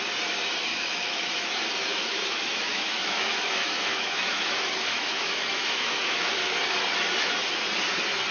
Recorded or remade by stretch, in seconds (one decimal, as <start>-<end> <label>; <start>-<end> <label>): 0.0-0.7 recorded; 0.7-1.3 remade; 1.3-1.9 recorded; 1.9-6.6 remade; 6.6-8.3 recorded